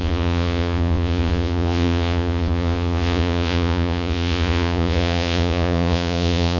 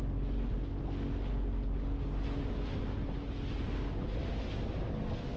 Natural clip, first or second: second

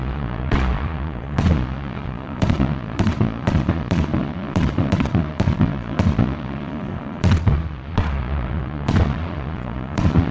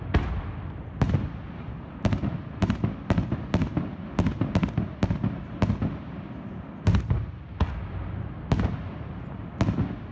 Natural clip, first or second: second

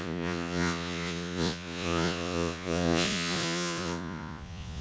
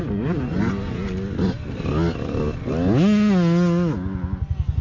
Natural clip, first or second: second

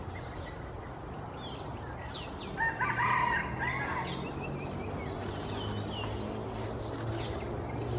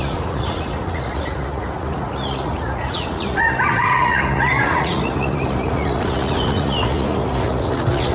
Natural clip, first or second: first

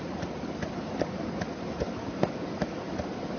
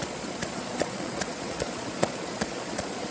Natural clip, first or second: first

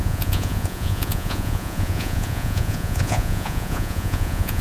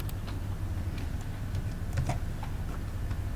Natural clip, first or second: second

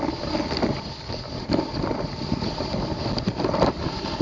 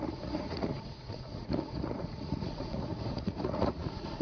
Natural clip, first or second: first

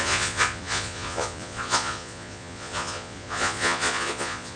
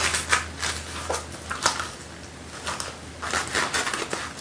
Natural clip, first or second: second